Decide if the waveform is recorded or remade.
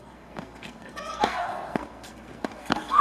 remade